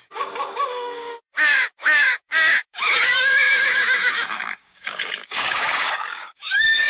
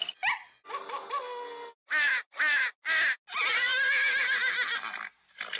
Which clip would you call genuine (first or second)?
second